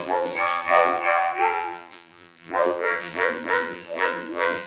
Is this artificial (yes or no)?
yes